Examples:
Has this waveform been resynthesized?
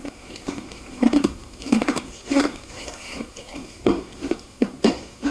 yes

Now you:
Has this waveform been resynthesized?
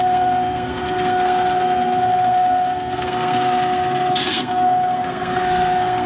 yes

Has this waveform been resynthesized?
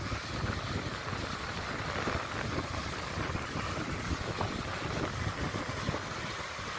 no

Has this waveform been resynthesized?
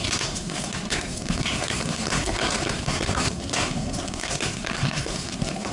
yes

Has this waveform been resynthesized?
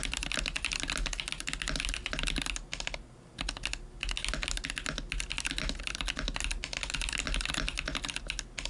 no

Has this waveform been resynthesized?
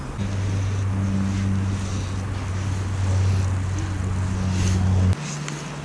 no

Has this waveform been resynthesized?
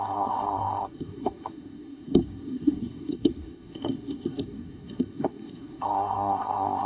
yes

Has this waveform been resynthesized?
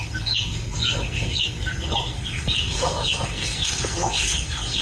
yes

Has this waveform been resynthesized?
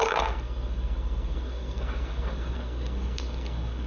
yes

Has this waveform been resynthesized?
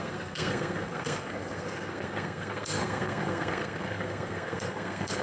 yes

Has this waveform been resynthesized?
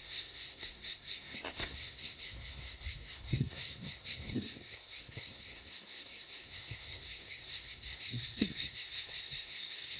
yes